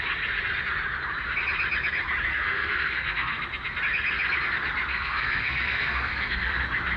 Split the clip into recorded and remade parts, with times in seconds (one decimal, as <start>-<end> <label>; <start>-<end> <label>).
0.0-2.3 recorded; 2.3-3.4 remade; 3.4-4.9 recorded; 4.9-6.6 remade; 6.6-7.0 recorded